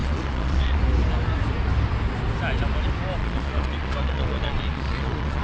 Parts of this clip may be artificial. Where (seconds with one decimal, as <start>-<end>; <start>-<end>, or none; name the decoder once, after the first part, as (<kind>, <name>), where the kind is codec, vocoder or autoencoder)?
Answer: 0.0-0.8 (vocoder, Vocos); 3.2-5.4